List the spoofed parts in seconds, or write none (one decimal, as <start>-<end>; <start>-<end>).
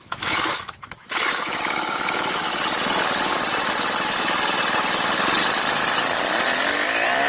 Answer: 0.0-2.5